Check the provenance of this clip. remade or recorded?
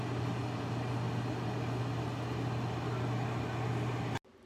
recorded